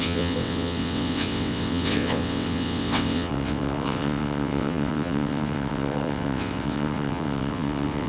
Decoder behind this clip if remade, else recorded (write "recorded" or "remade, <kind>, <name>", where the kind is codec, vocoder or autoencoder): remade, vocoder, WaveNeXt